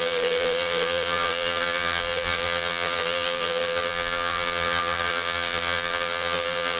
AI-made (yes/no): yes